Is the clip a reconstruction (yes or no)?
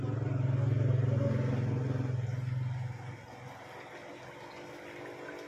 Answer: no